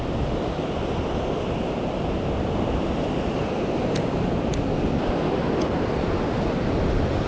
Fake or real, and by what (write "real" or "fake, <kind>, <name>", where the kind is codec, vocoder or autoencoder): real